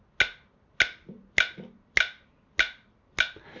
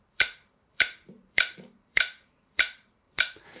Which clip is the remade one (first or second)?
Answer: second